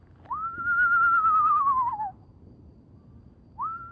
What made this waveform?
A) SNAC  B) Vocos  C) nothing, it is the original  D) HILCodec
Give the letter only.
C